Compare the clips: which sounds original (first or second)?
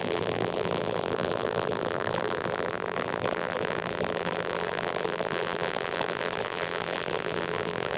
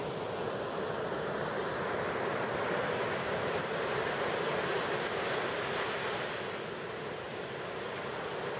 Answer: second